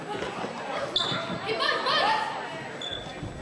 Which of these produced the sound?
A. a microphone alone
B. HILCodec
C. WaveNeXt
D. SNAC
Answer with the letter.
A